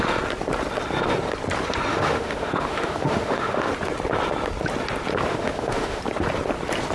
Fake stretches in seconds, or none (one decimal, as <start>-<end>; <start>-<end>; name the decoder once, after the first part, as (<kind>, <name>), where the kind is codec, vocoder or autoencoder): 1.9-3.7 (autoencoder, DAC-VAE); 5.3-6.0